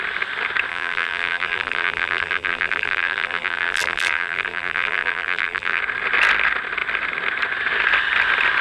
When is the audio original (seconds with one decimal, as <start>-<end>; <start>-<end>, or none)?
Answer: 0.0-0.7; 5.8-8.6